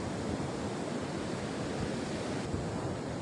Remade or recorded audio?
recorded